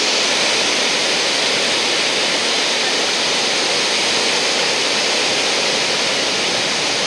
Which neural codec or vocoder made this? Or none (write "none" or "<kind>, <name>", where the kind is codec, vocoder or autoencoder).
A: none